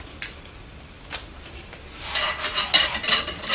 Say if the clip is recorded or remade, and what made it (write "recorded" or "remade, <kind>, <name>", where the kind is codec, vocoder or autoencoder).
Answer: recorded